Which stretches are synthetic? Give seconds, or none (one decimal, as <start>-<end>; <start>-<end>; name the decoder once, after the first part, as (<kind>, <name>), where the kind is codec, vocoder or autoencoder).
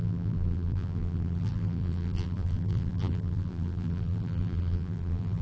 0.0-5.4 (vocoder, BigVGAN v2)